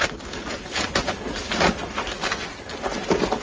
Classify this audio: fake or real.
real